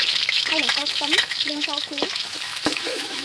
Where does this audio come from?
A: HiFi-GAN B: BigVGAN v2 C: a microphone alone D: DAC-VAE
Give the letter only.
D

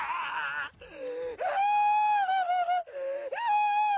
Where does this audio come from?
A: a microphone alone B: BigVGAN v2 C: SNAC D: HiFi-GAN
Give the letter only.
A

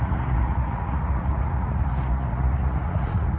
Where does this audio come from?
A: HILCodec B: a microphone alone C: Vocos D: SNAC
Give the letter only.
C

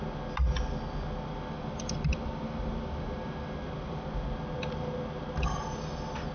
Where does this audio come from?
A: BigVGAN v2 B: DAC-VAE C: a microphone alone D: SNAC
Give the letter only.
C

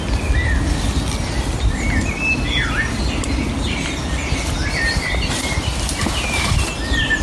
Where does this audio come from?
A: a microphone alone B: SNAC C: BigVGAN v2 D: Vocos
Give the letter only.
A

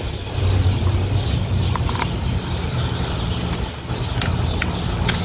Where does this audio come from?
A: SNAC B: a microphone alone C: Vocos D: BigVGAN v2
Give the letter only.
B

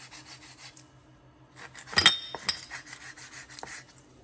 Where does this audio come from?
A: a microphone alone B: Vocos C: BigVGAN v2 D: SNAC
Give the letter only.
A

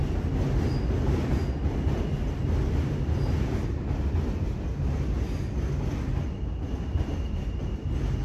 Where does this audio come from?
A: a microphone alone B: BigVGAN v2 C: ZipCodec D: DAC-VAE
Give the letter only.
A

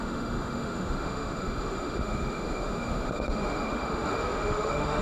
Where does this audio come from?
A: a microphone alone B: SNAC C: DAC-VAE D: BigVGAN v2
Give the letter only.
C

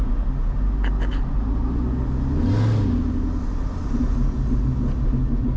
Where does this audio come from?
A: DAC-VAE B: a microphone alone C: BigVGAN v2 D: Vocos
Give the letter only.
B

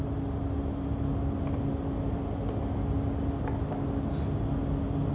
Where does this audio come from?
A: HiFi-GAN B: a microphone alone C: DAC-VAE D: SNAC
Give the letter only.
B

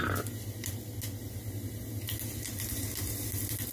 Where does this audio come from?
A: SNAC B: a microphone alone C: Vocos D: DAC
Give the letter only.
B